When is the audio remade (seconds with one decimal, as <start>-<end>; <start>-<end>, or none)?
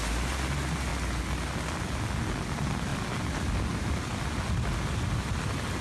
none